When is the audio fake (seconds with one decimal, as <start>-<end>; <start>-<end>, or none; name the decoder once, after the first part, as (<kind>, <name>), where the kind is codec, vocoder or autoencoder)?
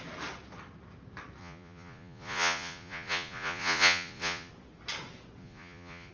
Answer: 1.4-4.5 (vocoder, Vocos); 5.4-6.1